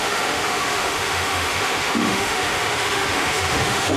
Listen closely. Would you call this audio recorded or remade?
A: remade